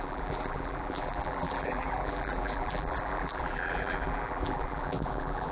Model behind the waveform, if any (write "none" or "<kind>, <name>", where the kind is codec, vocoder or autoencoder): vocoder, BigVGAN v2